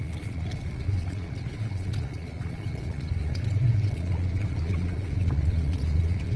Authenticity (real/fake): fake